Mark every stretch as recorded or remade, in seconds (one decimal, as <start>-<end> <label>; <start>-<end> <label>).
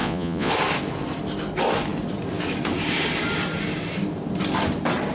0.0-0.5 remade; 0.5-5.1 recorded